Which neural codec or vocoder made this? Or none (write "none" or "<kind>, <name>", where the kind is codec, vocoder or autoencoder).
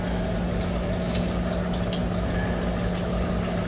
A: none